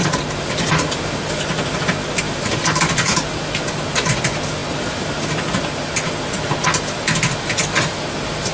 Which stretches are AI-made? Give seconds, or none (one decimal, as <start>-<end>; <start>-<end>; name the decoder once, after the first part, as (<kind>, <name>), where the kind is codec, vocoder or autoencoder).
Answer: none